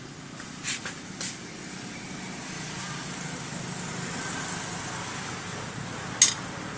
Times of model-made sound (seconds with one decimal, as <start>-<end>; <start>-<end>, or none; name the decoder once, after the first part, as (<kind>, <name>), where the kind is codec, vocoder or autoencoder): none